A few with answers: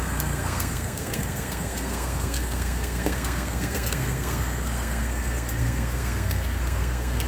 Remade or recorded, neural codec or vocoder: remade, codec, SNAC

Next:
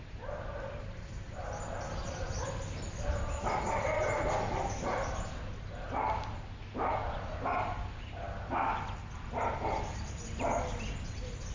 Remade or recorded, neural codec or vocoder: recorded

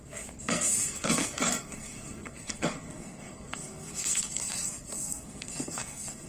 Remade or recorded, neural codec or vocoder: remade, codec, SNAC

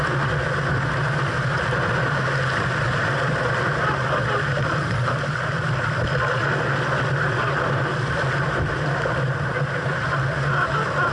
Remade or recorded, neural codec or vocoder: recorded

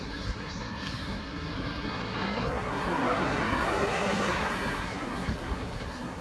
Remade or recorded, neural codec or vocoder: remade, codec, SNAC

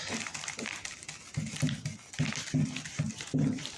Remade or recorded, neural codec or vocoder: recorded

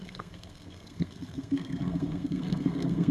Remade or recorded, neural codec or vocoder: remade, codec, SNAC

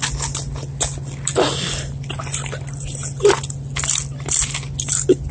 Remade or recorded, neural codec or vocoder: recorded